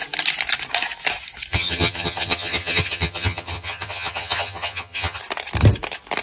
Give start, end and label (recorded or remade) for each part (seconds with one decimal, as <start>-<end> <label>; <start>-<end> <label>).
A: 0.0-1.5 recorded; 1.5-5.2 remade; 5.2-6.2 recorded